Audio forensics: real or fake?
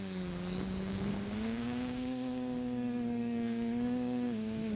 fake